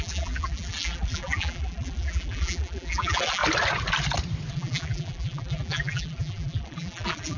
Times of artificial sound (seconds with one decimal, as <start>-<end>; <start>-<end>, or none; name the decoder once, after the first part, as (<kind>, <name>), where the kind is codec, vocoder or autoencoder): 0.0-3.4 (vocoder, BigVGAN v2); 4.5-7.4